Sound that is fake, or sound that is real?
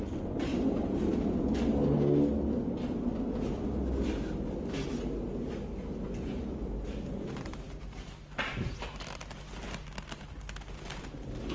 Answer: real